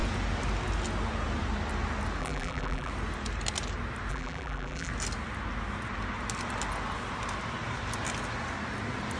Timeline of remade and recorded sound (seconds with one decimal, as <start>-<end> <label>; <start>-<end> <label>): 0.0-2.2 recorded; 2.2-2.9 remade; 2.9-4.1 recorded; 4.1-4.9 remade; 4.9-9.2 recorded